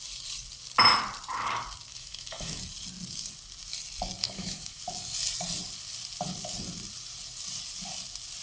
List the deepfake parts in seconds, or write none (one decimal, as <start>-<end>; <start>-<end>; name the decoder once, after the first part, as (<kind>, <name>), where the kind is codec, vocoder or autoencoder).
1.9-2.6 (autoencoder, DAC-VAE); 4.2-4.8